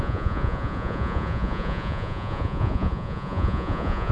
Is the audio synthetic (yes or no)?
yes